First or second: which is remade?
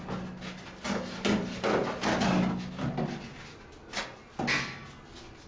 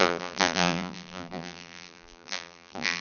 second